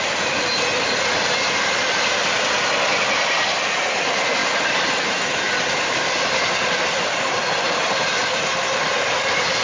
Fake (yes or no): no